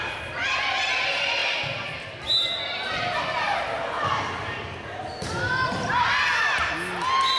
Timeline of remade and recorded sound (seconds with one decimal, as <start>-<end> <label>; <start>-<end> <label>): 0.0-7.4 recorded